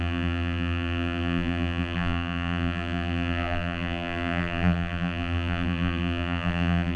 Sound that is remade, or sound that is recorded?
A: remade